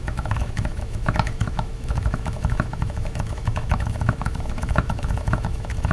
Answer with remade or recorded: remade